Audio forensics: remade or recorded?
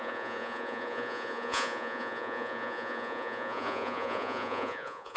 remade